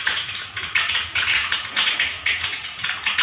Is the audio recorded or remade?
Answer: remade